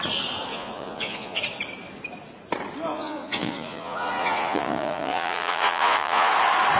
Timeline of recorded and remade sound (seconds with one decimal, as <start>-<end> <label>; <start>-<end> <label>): 0.0-0.5 recorded; 0.5-1.4 remade; 1.4-2.9 recorded; 2.9-6.3 remade; 6.3-6.8 recorded